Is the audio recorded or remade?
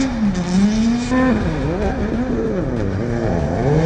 recorded